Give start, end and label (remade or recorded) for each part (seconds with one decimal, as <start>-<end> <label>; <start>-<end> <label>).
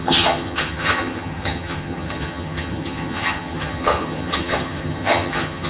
0.0-5.7 remade